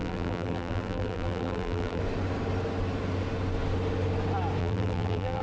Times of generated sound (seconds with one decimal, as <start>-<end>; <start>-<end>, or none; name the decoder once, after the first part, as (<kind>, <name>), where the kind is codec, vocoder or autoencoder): 0.0-2.0 (vocoder, BigVGAN v2); 4.6-5.4

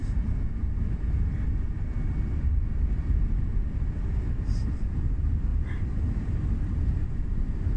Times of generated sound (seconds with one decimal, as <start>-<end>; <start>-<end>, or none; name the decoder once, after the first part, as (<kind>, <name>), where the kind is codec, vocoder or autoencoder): 5.5-7.8 (vocoder, BigVGAN v2)

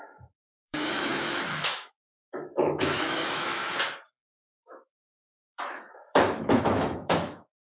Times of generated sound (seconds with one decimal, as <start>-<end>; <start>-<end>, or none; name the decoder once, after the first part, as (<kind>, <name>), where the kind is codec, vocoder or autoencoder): 0.0-3.6 (autoencoder, DAC-VAE); 4.6-7.8

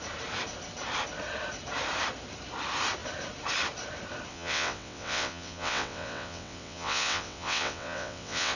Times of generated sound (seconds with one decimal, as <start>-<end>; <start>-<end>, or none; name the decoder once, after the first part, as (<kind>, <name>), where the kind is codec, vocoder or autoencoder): 4.3-8.6 (vocoder, WaveNeXt)

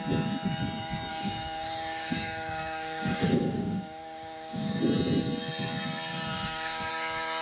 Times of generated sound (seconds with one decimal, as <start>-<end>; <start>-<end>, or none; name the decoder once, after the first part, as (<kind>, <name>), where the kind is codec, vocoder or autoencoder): 1.1-4.8 (codec, DAC); 6.1-6.9

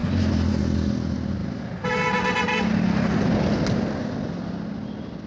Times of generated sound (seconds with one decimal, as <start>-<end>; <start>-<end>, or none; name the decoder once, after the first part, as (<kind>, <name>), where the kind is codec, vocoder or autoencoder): none

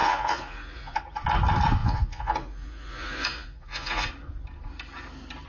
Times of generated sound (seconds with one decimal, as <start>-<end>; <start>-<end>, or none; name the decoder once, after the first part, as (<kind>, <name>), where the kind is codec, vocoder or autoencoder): 0.0-1.0 (vocoder, Vocos); 1.8-4.1